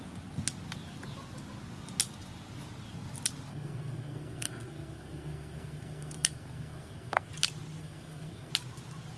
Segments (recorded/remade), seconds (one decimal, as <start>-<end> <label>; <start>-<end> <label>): 0.0-3.5 recorded; 3.5-7.3 remade; 7.3-7.8 recorded; 7.8-8.5 remade; 8.5-9.2 recorded